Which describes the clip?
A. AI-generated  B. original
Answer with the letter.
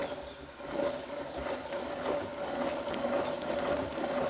B